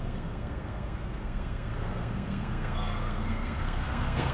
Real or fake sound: fake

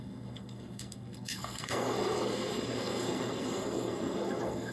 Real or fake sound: fake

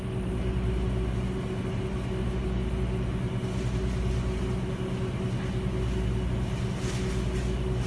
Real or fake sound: real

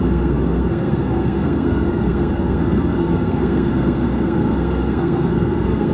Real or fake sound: fake